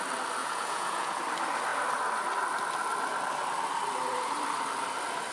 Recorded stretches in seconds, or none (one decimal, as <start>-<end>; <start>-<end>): 0.0-0.4; 1.2-5.3